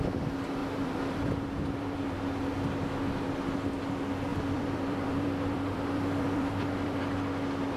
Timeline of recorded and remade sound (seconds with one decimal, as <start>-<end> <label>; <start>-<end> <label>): 0.0-0.6 recorded; 0.6-2.4 remade; 2.4-4.3 recorded; 4.3-7.0 remade; 7.0-7.8 recorded

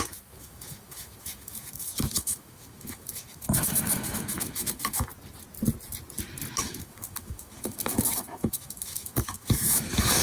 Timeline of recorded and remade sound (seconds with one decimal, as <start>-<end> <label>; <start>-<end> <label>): 0.0-5.1 remade; 5.1-6.6 recorded; 6.6-10.2 remade